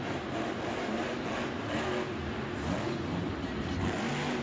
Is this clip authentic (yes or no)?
yes